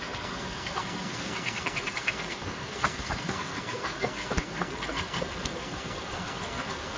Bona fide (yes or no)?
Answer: no